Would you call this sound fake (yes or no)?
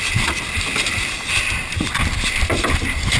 no